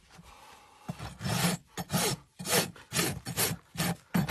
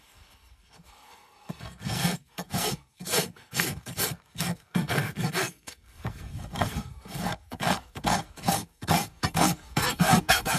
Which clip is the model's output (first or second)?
second